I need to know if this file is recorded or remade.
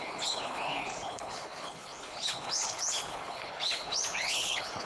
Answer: remade